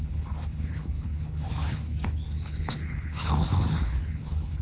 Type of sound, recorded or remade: remade